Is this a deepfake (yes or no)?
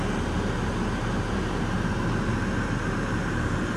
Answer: no